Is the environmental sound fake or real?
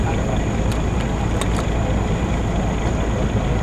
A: real